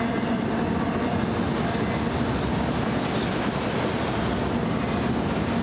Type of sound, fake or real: real